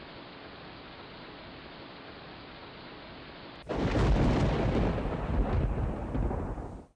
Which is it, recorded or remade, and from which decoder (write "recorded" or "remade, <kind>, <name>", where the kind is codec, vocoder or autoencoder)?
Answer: recorded